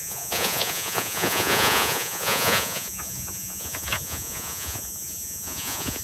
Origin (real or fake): fake